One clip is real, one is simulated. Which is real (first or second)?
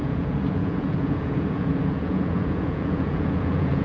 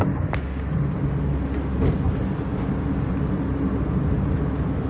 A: second